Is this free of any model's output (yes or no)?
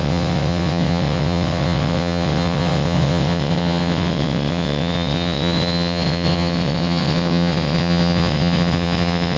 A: no